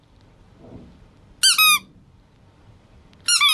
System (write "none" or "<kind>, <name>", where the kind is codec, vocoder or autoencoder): none